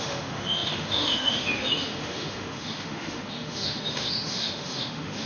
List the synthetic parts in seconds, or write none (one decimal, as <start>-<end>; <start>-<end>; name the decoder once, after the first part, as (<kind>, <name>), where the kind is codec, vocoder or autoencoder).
0.0-5.3 (autoencoder, DAC-VAE)